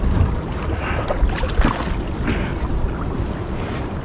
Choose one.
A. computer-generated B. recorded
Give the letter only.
B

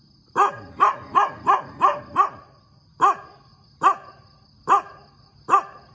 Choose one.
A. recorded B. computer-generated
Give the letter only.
A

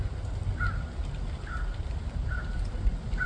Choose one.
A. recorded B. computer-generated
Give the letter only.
A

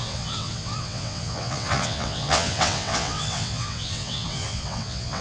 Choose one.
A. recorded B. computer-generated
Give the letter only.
B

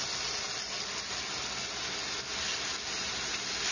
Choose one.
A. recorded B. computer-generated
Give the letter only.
A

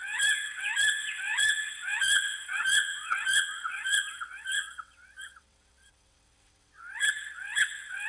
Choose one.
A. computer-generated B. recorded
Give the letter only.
A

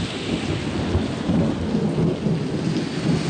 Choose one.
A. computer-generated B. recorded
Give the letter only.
B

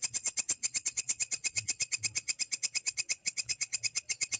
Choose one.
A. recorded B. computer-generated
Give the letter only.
B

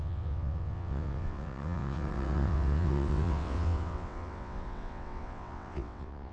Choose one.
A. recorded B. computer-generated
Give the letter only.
B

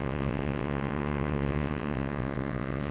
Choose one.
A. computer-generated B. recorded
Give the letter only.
A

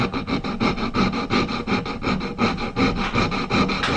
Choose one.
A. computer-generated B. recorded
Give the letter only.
B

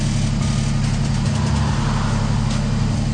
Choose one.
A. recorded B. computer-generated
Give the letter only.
A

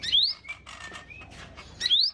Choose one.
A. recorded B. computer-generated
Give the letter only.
A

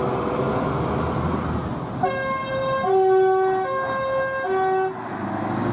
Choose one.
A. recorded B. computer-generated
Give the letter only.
A